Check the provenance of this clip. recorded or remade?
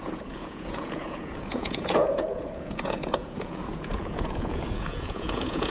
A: remade